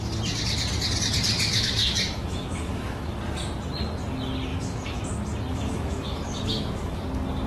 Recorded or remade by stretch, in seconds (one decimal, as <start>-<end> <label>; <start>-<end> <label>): 0.0-1.5 recorded; 1.5-3.1 remade; 3.1-4.5 recorded; 4.5-5.0 remade; 5.0-5.5 recorded; 5.5-7.0 remade; 7.0-7.5 recorded